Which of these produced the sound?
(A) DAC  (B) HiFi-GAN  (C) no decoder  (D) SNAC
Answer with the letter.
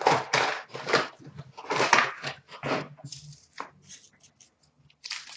C